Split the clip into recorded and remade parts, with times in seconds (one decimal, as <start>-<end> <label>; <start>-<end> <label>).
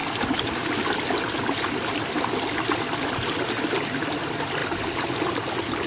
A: 0.0-5.9 recorded